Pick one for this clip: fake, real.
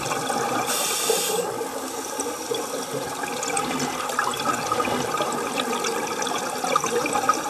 real